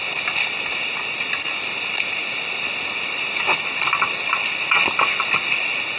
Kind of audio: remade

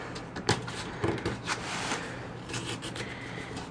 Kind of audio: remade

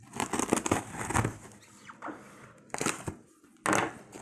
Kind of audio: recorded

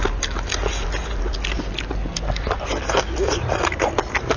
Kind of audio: recorded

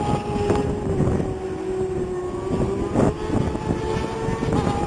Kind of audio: recorded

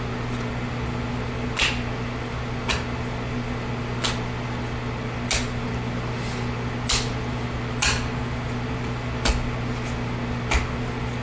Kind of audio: recorded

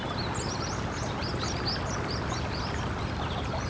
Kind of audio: recorded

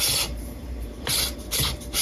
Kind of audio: remade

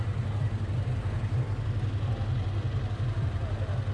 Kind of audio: recorded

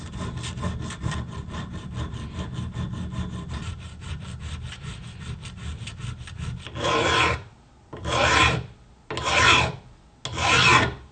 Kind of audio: recorded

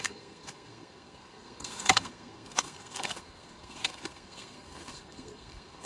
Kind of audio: remade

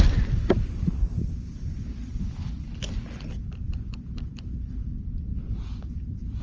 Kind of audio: remade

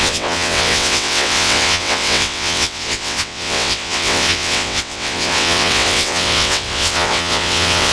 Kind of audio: remade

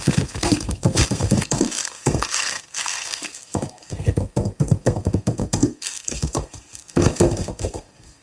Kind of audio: remade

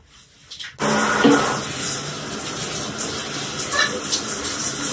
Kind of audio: recorded